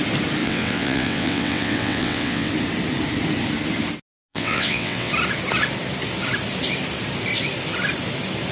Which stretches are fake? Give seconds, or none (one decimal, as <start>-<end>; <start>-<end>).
0.4-2.5; 4.3-5.1